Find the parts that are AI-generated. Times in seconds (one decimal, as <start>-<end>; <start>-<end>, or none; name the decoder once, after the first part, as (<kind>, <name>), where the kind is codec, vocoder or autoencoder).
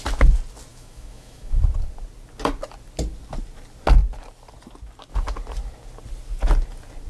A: 0.7-1.6 (autoencoder, DAC-VAE)